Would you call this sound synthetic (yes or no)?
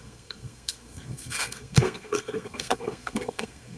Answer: yes